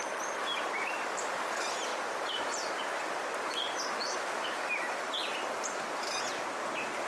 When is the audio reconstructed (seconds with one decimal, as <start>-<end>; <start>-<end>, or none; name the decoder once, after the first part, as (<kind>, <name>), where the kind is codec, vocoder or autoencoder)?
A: none